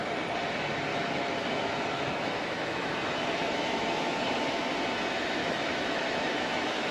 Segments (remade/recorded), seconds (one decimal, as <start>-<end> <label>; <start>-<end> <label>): 0.0-0.9 recorded; 0.9-4.7 remade; 4.7-5.4 recorded; 5.4-6.9 remade